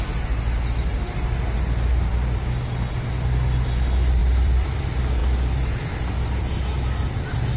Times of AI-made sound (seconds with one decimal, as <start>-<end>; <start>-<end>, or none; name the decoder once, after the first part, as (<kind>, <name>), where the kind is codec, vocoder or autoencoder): 4.2-4.8 (vocoder, BigVGAN v2)